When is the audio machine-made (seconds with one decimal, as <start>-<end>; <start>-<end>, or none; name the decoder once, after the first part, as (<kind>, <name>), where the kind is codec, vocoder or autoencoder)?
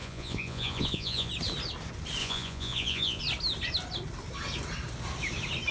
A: 0.0-1.3 (vocoder, Vocos); 2.2-3.2